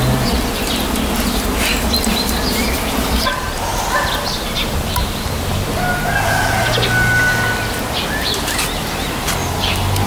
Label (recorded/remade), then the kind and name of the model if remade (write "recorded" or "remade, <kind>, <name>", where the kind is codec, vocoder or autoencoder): recorded